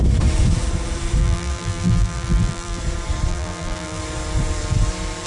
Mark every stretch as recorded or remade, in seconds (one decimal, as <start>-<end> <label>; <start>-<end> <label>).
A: 0.0-1.2 recorded; 1.2-2.8 remade; 2.8-3.3 recorded; 3.3-4.0 remade; 4.0-5.3 recorded